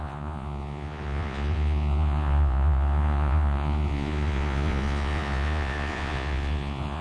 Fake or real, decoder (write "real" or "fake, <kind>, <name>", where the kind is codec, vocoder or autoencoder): fake, vocoder, Vocos